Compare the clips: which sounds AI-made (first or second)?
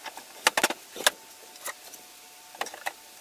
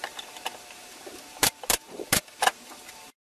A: second